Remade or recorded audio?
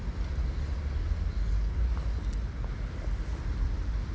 recorded